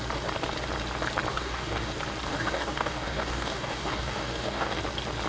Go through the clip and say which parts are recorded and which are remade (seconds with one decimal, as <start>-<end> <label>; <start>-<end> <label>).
0.0-1.3 recorded; 1.3-1.9 remade; 1.9-2.3 recorded; 2.3-4.8 remade; 4.8-5.3 recorded